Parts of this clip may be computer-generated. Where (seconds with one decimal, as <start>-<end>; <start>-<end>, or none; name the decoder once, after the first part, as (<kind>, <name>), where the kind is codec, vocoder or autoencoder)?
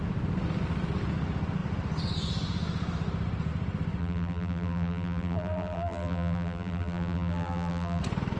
4.0-8.0 (vocoder, BigVGAN v2)